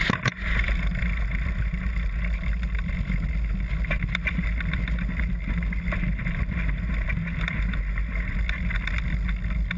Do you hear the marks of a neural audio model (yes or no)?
no